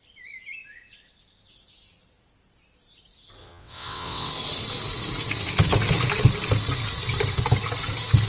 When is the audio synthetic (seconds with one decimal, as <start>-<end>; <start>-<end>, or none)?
3.4-4.3